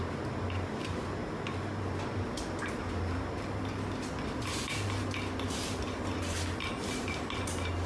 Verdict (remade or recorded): recorded